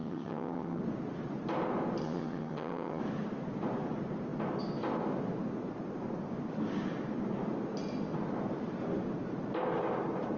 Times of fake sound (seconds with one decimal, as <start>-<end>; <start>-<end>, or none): 0.0-0.8; 2.0-3.0